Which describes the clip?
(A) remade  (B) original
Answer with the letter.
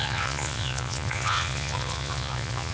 A